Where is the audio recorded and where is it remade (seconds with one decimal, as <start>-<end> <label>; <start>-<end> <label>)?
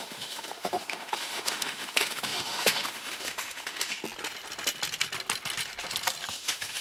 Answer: 0.0-4.0 remade; 4.0-6.3 recorded; 6.3-6.8 remade